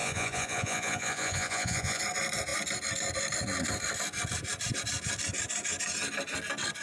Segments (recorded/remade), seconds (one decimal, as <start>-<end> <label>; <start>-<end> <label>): 0.0-2.0 remade; 2.0-6.8 recorded

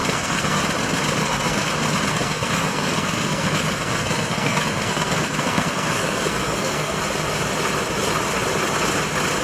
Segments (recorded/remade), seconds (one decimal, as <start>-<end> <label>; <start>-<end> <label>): 0.0-0.6 remade; 0.6-1.2 recorded; 1.2-1.7 remade; 1.7-2.1 recorded; 2.1-7.0 remade; 7.0-9.4 recorded